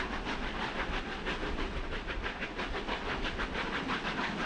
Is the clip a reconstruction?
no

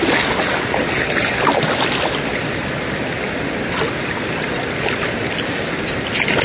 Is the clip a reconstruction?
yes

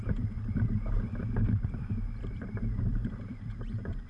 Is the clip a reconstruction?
yes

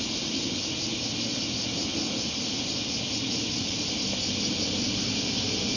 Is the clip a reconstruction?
no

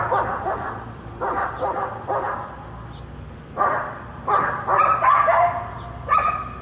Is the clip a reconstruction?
yes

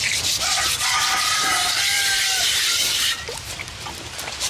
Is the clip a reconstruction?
yes